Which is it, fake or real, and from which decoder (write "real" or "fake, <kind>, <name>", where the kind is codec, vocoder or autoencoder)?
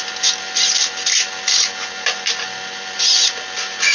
real